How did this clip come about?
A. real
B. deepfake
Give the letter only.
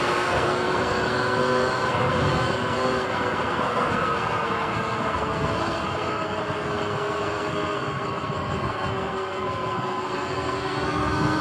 B